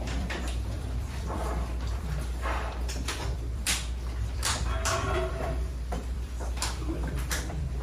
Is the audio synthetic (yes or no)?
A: yes